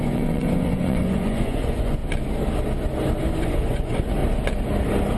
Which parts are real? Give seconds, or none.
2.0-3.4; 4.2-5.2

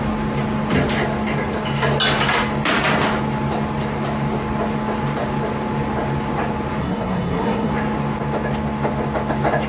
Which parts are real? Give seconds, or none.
0.0-6.8; 7.7-9.7

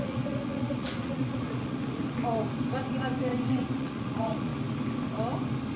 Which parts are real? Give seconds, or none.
2.0-3.5; 4.5-5.8

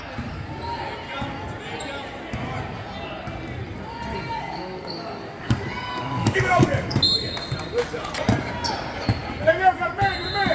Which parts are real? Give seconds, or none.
0.0-4.1; 7.0-10.5

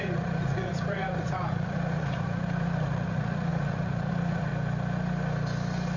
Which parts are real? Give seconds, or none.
4.5-6.0

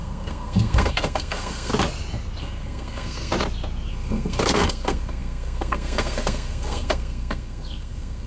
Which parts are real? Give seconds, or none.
1.7-2.4; 3.3-3.9

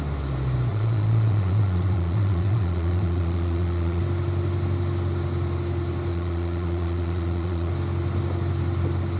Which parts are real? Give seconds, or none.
0.0-0.7; 4.0-6.1; 7.7-9.2